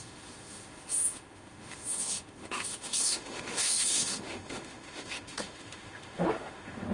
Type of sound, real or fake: fake